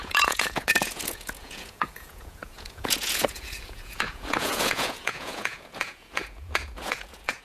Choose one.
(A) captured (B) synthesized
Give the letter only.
B